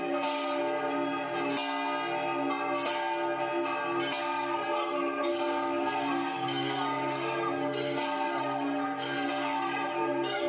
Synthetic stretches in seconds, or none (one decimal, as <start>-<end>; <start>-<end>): 0.0-0.6; 4.2-10.5